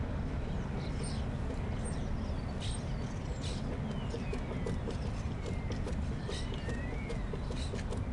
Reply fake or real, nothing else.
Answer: real